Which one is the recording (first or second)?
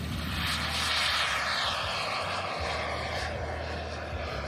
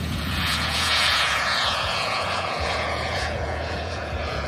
first